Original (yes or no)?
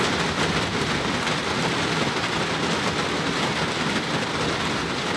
yes